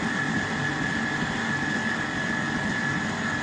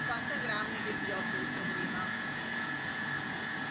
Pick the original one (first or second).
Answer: first